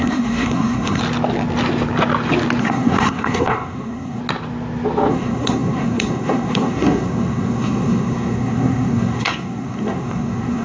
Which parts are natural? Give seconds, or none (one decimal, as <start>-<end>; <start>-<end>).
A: 1.0-2.6; 4.2-5.1